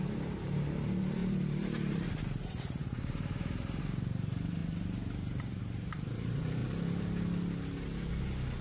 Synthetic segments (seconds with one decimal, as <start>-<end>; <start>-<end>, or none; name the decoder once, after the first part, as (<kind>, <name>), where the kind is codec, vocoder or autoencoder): 0.0-6.6 (vocoder, BigVGAN v2)